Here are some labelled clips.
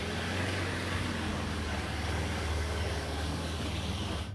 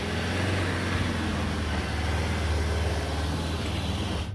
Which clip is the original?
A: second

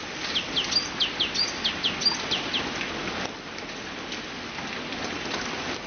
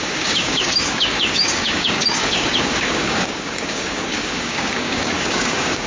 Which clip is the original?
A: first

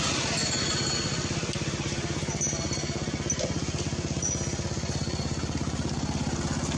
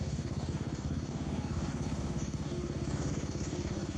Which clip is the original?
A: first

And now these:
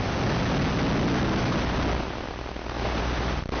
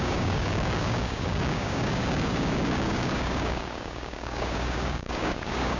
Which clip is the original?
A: first